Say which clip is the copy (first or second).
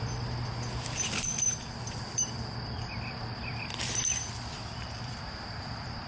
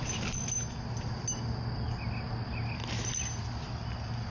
first